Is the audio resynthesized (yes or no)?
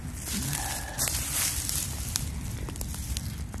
no